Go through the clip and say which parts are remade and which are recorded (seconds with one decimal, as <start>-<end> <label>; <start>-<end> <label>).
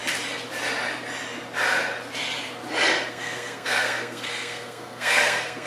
0.0-3.1 recorded; 3.1-5.7 remade